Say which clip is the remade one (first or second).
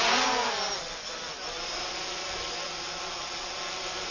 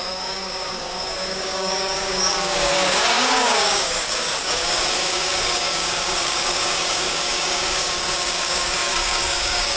second